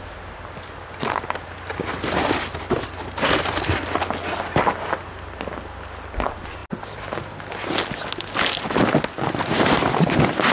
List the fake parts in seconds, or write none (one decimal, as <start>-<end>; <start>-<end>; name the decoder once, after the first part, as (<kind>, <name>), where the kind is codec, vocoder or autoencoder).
none